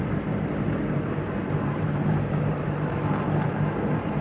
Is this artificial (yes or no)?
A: no